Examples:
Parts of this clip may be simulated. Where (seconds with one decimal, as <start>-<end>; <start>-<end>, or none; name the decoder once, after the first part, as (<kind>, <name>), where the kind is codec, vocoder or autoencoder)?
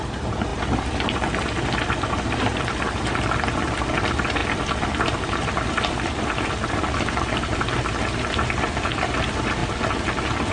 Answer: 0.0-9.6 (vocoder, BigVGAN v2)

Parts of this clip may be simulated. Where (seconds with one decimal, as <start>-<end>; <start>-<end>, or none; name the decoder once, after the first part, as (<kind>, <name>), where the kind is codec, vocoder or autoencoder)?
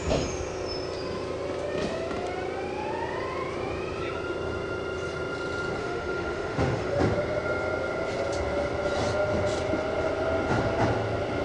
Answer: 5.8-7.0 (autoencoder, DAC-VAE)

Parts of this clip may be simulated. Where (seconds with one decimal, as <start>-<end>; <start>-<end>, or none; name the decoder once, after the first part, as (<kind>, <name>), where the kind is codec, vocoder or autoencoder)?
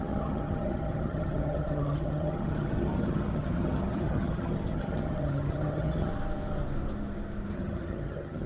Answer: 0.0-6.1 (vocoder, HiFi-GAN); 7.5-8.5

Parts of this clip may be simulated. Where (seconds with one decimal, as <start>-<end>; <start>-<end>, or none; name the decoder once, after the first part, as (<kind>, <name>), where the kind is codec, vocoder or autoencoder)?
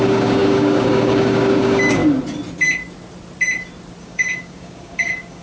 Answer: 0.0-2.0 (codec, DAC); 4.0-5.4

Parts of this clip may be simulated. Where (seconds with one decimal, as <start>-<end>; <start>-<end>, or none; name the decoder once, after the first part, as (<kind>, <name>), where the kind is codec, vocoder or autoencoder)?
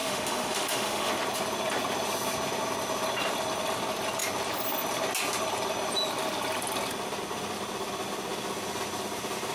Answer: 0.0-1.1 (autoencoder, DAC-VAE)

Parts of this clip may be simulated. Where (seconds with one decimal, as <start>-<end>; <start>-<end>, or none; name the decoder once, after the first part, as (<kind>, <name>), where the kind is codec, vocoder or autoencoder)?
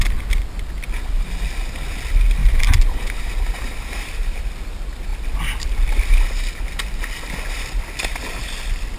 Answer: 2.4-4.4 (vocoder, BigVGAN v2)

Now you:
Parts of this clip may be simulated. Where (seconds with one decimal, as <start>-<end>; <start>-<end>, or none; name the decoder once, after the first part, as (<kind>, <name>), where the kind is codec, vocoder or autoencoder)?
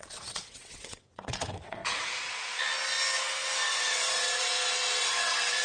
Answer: 0.0-1.8 (vocoder, WaveNeXt); 3.7-4.5; 5.0-5.6